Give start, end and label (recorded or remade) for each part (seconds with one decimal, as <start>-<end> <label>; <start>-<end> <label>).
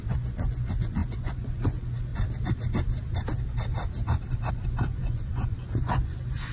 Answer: 0.0-2.1 remade; 2.1-4.5 recorded; 4.5-6.5 remade